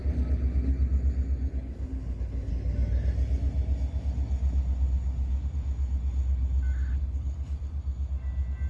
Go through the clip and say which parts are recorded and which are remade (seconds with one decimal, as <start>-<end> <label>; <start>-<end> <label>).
0.0-1.5 recorded; 1.5-2.5 remade; 2.5-7.0 recorded; 7.0-7.8 remade; 7.8-8.7 recorded